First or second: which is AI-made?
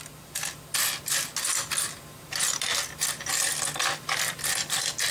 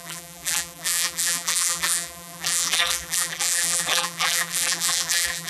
second